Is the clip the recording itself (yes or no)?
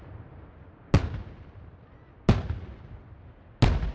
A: yes